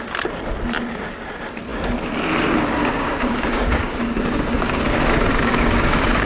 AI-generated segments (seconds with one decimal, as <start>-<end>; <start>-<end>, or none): 2.8-6.3